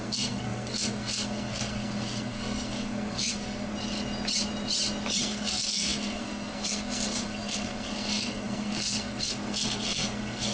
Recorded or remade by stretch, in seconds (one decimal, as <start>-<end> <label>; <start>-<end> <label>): 0.0-3.7 remade; 3.7-5.2 recorded; 5.2-10.5 remade